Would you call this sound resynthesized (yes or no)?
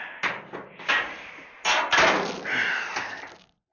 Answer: no